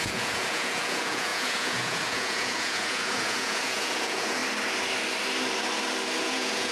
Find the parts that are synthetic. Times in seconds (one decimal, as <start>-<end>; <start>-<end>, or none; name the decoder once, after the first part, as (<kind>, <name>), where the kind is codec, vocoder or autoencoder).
0.0-4.4 (vocoder, Vocos); 6.2-6.7

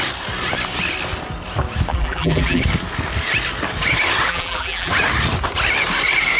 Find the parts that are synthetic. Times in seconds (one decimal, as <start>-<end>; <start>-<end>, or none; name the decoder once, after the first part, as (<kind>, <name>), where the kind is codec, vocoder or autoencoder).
1.9-2.6 (vocoder, BigVGAN v2); 4.3-4.9

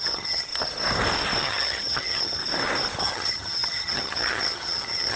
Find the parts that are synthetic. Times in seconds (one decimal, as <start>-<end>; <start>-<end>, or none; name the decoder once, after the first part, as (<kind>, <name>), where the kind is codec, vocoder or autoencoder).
0.0-0.5 (vocoder, HiFi-GAN); 1.4-2.4; 3.0-5.2

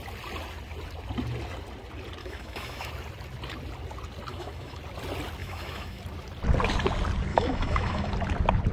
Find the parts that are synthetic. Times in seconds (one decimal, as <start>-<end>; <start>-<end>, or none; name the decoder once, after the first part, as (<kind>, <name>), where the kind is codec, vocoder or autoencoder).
2.2-2.9 (autoencoder, DAC-VAE); 4.3-4.8; 5.4-6.0; 7.3-8.1

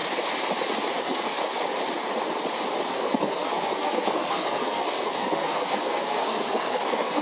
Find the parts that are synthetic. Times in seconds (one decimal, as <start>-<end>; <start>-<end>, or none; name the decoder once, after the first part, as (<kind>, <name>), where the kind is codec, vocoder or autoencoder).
1.0-1.4 (codec, SNAC); 2.9-7.2

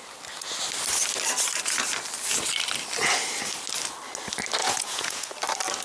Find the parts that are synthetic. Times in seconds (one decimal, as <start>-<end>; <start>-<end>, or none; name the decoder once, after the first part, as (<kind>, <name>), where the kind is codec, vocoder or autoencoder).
4.6-5.3 (vocoder, Vocos)